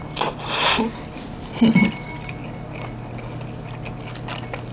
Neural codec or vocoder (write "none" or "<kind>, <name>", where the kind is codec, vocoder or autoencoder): none